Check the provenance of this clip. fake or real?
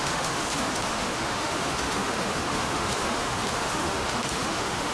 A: fake